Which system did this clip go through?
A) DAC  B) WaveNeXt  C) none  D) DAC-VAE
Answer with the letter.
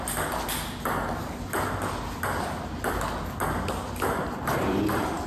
C